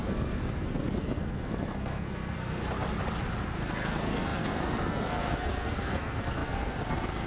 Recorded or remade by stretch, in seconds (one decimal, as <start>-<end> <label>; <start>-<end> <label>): 0.0-2.6 remade; 2.6-3.6 recorded; 3.6-7.3 remade